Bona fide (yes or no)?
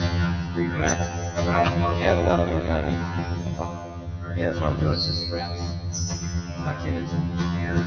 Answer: no